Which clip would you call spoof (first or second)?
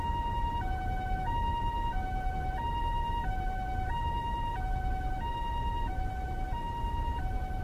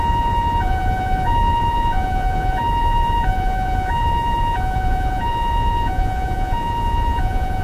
second